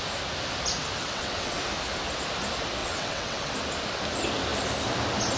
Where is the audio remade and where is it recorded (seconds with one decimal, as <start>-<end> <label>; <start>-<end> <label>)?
0.0-1.0 recorded; 1.0-1.6 remade; 1.6-2.8 recorded; 2.8-3.5 remade; 3.5-5.4 recorded